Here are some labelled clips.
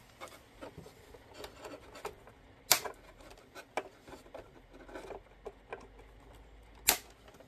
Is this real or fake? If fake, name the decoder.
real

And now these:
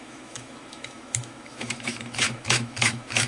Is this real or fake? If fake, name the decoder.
fake, autoencoder, DAC-VAE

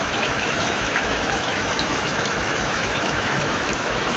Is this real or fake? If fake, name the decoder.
fake, autoencoder, DAC-VAE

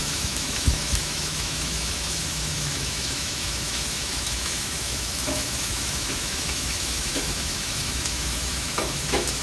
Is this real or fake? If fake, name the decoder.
fake, autoencoder, DAC-VAE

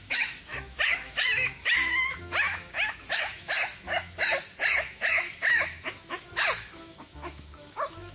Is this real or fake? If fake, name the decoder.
fake, autoencoder, DAC-VAE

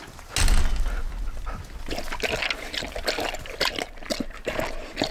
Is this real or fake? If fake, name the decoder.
real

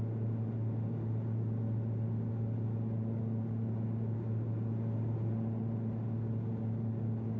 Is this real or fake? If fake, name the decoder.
real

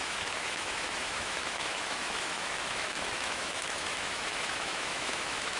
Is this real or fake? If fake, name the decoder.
fake, autoencoder, DAC-VAE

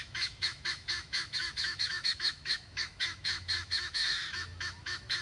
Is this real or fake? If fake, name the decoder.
fake, autoencoder, DAC-VAE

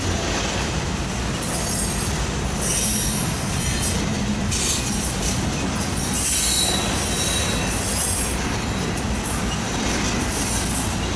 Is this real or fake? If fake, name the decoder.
real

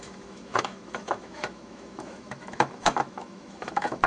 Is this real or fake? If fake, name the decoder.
fake, autoencoder, DAC-VAE